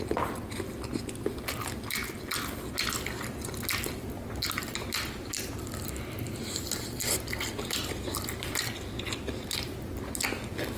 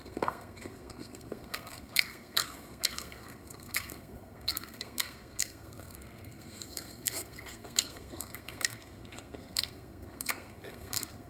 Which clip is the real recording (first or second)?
first